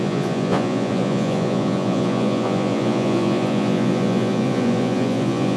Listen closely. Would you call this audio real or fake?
fake